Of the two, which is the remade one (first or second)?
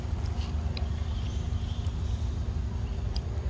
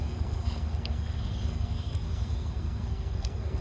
second